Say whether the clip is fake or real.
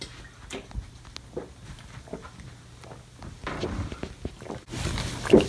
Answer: real